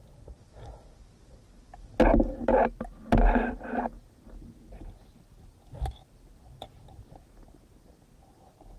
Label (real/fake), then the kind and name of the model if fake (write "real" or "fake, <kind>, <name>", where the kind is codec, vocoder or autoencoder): real